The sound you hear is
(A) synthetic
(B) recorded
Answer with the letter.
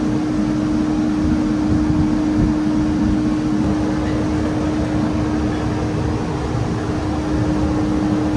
B